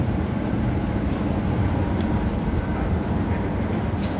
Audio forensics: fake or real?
fake